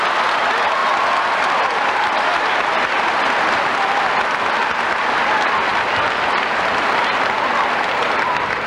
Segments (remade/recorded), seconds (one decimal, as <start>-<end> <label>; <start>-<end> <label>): 0.0-8.7 recorded